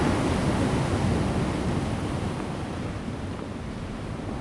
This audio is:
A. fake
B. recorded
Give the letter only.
B